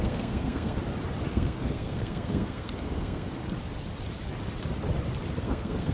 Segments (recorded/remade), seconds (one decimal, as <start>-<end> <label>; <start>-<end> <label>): 0.0-0.8 remade; 0.8-1.3 recorded; 1.3-3.4 remade; 3.4-5.4 recorded; 5.4-5.9 remade

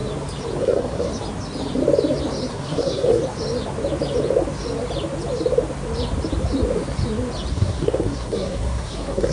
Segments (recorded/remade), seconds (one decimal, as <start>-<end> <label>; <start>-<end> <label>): 0.0-0.6 recorded; 0.6-1.1 remade; 1.1-2.5 recorded; 2.5-3.2 remade; 3.2-7.5 recorded; 7.5-9.3 remade

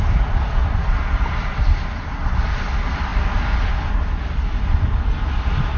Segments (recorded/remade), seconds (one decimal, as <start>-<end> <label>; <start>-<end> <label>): 0.0-5.8 recorded

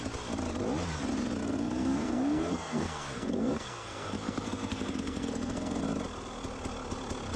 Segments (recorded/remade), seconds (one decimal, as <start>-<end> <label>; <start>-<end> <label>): 0.0-1.4 recorded; 1.4-5.8 remade; 5.8-7.4 recorded